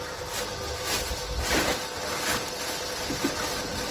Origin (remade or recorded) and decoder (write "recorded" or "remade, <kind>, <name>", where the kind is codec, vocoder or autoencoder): recorded